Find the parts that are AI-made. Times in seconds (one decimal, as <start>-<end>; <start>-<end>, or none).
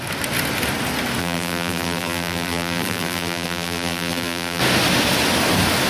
1.2-4.6